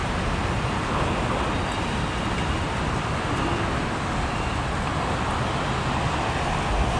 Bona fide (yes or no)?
yes